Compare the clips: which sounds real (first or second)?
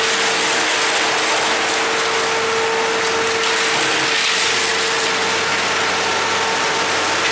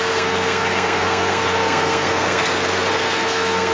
first